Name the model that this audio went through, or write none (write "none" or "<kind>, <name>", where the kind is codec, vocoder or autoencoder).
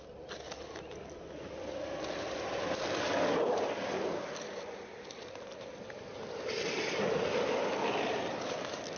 none